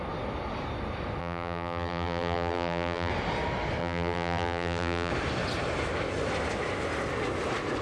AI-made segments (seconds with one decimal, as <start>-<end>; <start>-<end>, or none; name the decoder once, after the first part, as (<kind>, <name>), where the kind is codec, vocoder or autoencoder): 1.2-3.1 (vocoder, BigVGAN v2); 3.8-5.1